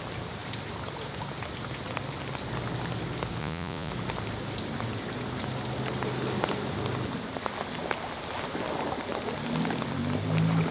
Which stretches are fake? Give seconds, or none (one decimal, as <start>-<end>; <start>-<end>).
3.4-3.9